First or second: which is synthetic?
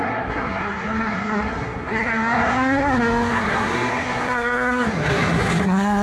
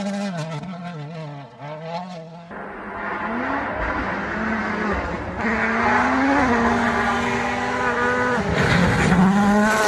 first